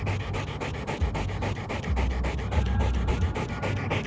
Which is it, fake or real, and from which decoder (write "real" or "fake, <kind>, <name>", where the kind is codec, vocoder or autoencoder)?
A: real